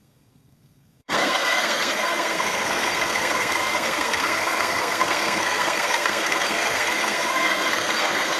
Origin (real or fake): fake